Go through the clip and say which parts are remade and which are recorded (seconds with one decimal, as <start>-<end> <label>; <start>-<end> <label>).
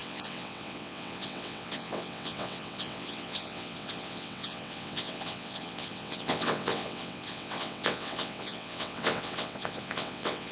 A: 0.0-10.5 remade